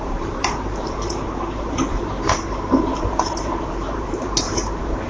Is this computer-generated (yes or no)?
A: yes